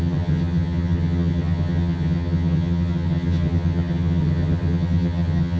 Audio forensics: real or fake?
fake